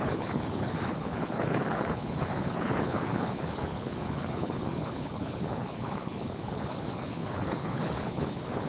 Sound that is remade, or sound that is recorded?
remade